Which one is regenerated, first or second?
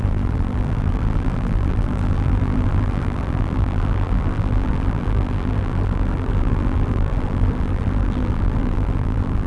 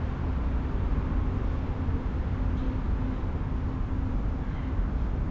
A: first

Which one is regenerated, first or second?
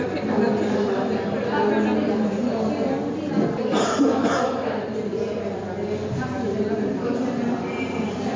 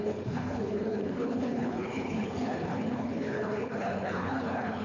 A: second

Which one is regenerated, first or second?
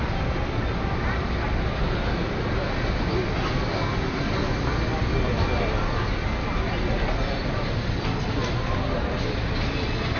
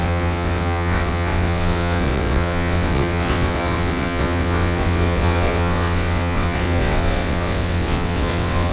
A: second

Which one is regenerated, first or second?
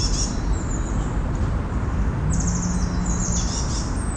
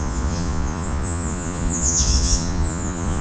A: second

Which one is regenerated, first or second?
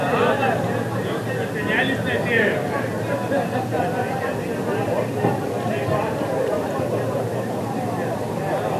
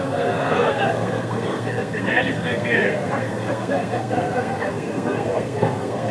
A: second